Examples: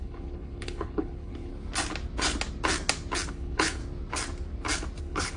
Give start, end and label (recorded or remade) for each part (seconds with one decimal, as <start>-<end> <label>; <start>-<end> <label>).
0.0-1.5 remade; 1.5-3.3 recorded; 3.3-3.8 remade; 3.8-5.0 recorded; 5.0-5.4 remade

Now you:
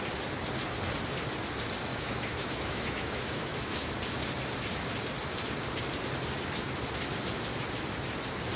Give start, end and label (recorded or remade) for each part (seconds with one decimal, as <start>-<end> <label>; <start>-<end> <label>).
0.0-1.9 recorded; 1.9-3.9 remade; 3.9-8.6 recorded

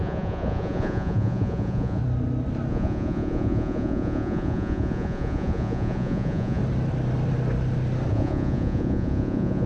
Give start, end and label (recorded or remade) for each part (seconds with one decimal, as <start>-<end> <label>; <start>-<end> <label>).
0.0-2.0 remade; 2.0-2.7 recorded; 2.7-6.6 remade; 6.6-8.1 recorded; 8.1-9.7 remade

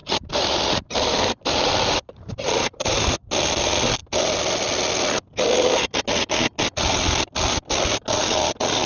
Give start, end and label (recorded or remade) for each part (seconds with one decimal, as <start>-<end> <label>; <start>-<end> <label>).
0.0-3.3 remade; 3.3-8.9 recorded